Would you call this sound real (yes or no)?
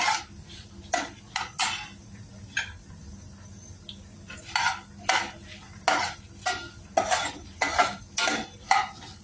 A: yes